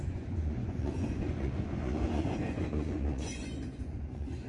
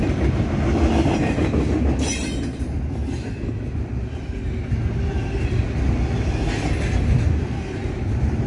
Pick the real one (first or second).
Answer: second